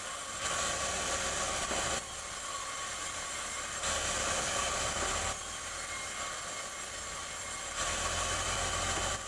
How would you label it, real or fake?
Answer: real